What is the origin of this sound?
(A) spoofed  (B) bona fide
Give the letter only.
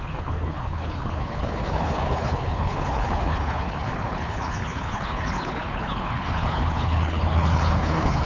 A